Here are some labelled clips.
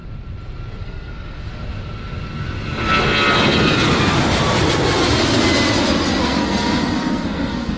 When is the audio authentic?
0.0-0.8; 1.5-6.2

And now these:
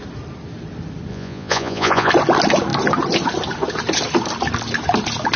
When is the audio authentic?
0.0-1.1; 2.1-5.4

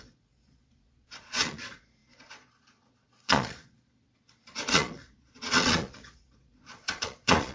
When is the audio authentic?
none

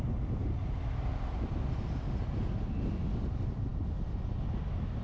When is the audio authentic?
0.0-5.0

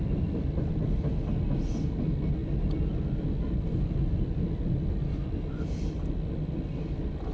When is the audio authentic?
0.0-7.3

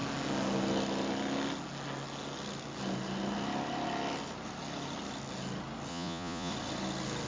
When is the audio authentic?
0.0-5.9; 6.5-7.3

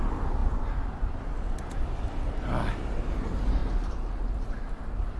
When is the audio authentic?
0.0-3.6; 4.8-5.2

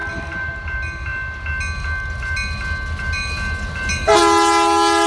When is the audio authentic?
0.0-5.1